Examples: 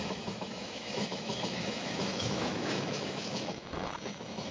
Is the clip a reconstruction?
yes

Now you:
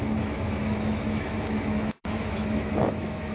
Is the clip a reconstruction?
yes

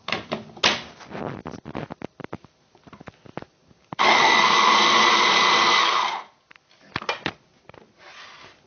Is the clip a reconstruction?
no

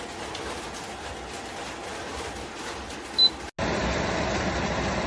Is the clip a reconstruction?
no